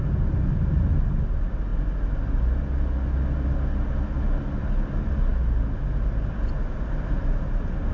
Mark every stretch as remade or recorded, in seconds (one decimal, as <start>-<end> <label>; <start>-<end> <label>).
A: 0.0-7.9 recorded